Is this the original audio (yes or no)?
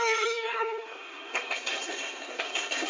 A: no